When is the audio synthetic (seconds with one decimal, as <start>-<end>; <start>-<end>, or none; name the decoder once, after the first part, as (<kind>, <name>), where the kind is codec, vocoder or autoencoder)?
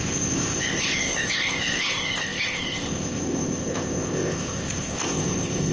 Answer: 0.0-5.7 (codec, ZipCodec)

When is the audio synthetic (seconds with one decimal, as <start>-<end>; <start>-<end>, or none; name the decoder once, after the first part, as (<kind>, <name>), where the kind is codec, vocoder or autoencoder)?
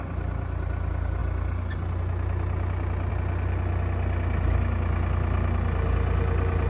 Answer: none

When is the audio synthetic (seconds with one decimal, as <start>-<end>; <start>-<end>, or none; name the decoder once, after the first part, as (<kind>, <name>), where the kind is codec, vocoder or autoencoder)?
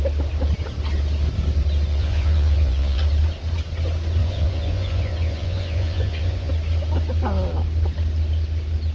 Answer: 1.9-3.0 (vocoder, Vocos); 4.2-6.5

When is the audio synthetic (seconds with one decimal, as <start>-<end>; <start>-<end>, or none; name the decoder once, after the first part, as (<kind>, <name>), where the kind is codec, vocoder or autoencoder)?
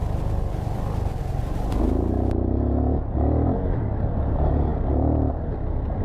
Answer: none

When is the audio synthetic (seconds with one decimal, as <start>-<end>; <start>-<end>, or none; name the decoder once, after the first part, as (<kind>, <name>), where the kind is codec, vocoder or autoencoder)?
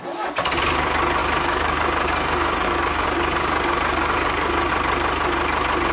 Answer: 1.2-4.7 (codec, DAC)